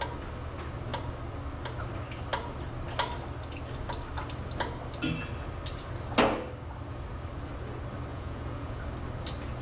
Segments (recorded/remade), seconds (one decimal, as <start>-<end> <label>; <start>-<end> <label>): 0.0-8.1 recorded; 8.1-8.8 remade; 8.8-9.6 recorded